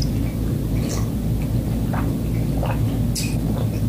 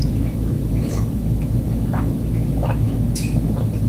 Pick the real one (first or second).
first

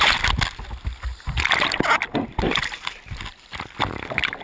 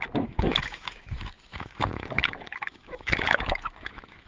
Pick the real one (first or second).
first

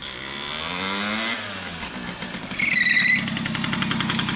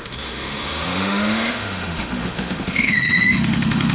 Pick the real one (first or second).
first